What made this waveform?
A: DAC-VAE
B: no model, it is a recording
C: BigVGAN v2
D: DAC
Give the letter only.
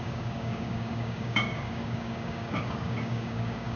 D